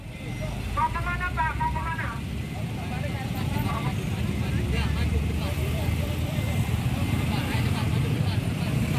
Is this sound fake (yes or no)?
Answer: yes